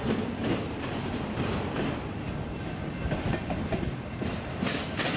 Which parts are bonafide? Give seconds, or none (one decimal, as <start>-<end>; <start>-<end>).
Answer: 0.0-5.2